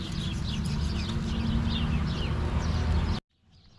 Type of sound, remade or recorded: recorded